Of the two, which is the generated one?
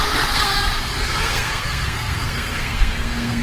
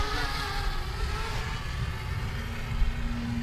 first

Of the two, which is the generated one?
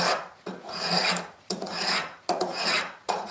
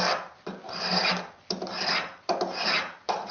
first